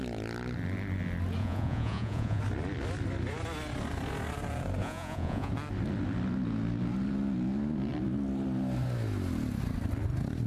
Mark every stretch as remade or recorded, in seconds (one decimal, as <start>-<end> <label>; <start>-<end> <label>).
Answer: 0.0-1.4 recorded; 1.4-2.4 remade; 2.4-4.8 recorded; 4.8-5.5 remade; 5.5-10.5 recorded